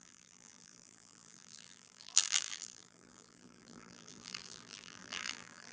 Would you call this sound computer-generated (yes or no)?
yes